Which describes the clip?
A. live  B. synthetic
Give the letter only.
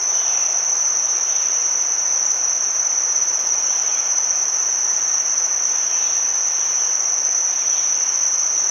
B